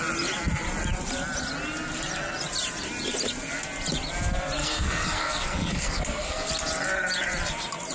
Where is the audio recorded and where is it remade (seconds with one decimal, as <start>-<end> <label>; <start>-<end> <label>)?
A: 0.0-4.6 recorded; 4.6-6.5 remade; 6.5-7.9 recorded